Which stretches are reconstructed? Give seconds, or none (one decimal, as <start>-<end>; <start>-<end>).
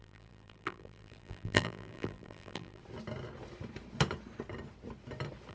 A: 0.0-2.8